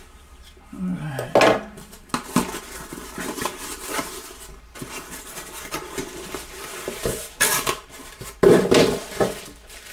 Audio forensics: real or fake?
real